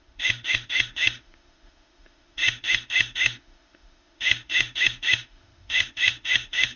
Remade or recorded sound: remade